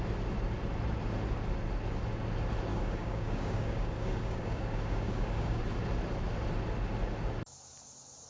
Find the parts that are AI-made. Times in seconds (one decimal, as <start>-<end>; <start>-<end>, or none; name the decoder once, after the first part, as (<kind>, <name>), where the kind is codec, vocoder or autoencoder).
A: 2.7-5.6 (codec, DAC)